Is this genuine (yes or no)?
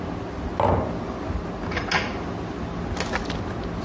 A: yes